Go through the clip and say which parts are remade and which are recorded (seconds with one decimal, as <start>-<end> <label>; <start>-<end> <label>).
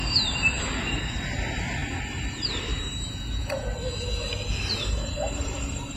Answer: 0.0-3.4 remade; 3.4-5.4 recorded; 5.4-6.0 remade